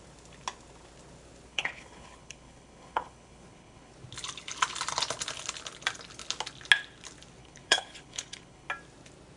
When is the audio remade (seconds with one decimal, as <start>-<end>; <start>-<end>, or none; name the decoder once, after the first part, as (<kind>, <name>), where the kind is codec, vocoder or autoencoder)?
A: 1.5-3.9 (codec, HILCodec); 7.4-8.7